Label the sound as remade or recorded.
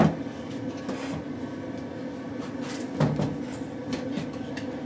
recorded